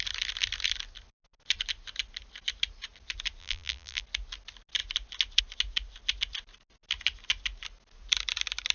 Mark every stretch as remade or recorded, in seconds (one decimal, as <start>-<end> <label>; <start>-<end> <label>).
0.0-3.4 recorded; 3.4-4.0 remade; 4.0-8.7 recorded